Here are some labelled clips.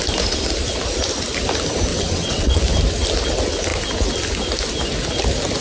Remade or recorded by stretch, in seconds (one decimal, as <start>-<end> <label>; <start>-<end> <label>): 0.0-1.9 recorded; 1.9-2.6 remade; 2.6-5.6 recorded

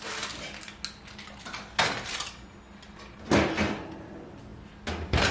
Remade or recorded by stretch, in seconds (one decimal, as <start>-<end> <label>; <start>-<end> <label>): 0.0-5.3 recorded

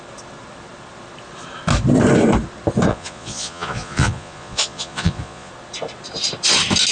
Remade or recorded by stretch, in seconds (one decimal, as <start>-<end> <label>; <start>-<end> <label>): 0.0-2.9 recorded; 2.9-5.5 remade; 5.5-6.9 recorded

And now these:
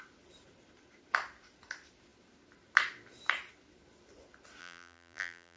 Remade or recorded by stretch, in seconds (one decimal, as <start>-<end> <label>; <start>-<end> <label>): 0.0-4.6 recorded; 4.6-5.6 remade

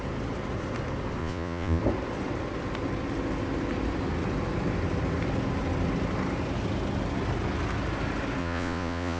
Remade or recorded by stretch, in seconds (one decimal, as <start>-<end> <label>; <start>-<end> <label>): 0.0-1.2 recorded; 1.2-1.8 remade; 1.8-8.4 recorded; 8.4-9.2 remade